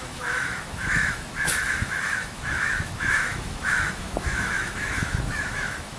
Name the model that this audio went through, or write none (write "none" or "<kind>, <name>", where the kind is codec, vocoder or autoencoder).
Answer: autoencoder, DAC-VAE